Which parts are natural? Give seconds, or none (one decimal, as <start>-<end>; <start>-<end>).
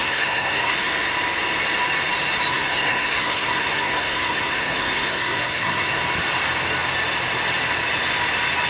1.0-2.5; 6.0-8.7